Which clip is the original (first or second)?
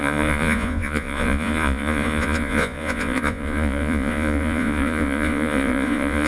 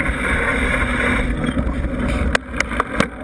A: second